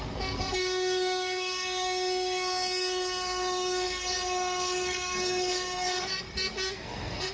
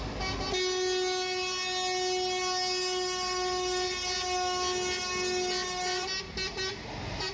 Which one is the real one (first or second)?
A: second